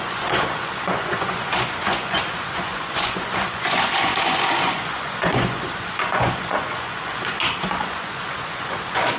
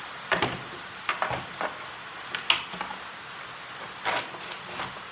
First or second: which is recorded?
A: second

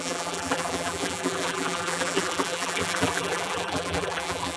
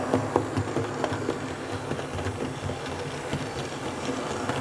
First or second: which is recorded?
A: second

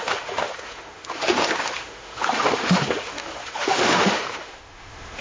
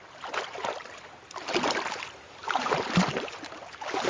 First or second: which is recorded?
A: second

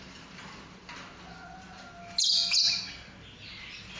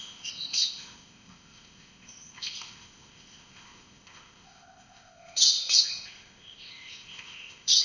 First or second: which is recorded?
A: first